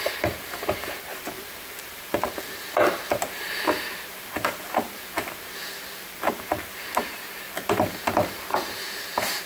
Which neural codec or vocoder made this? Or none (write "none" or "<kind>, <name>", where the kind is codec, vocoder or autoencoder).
vocoder, BigVGAN v2